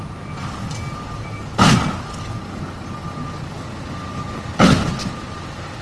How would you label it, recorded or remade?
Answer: recorded